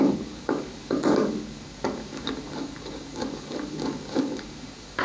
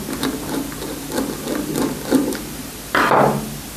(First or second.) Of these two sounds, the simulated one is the first